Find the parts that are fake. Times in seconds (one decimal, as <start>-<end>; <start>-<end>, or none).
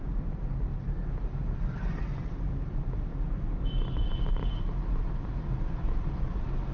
none